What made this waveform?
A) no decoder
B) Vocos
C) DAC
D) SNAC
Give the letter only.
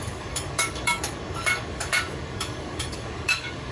C